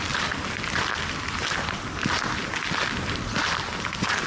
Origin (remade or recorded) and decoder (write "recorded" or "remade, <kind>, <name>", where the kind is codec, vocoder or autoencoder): recorded